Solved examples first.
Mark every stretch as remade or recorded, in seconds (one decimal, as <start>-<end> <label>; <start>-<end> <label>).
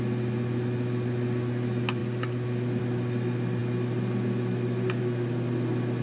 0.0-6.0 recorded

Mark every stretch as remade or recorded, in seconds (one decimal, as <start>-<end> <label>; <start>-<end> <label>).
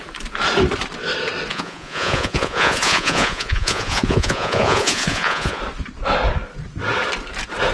0.0-1.5 recorded; 1.5-5.6 remade; 5.6-7.7 recorded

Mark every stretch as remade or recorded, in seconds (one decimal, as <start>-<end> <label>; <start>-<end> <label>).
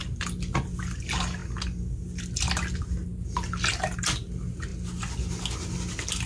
0.0-6.3 recorded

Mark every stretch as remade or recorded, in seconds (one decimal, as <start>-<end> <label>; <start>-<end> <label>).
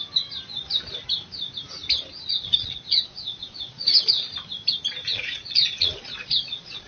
0.0-2.3 recorded; 2.3-4.0 remade; 4.0-5.1 recorded; 5.1-6.9 remade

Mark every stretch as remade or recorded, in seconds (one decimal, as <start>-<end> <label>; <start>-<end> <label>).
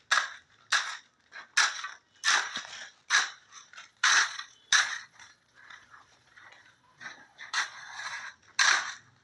0.0-3.9 recorded; 3.9-8.3 remade; 8.3-9.2 recorded